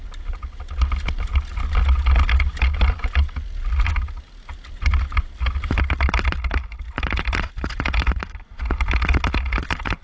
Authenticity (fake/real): real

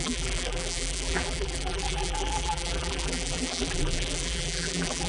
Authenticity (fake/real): fake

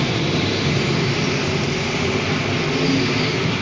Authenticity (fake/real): real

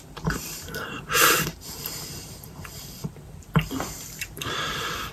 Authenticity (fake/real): fake